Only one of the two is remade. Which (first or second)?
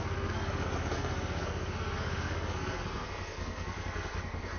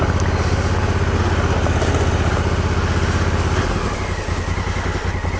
first